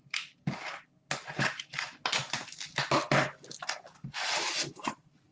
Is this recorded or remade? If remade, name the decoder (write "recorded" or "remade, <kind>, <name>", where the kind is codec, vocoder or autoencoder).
recorded